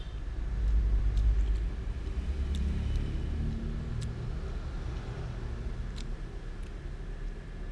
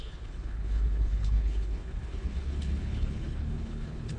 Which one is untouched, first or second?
first